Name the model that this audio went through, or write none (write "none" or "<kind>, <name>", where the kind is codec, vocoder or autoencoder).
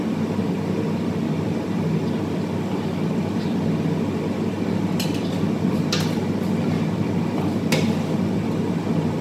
none